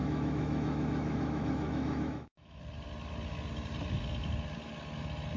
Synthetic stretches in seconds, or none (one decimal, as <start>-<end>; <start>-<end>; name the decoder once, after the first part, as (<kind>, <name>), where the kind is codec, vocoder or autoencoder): 0.0-2.6 (autoencoder, DAC-VAE)